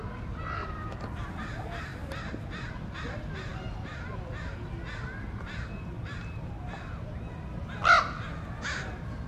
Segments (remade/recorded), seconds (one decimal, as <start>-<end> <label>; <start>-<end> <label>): 0.0-9.3 recorded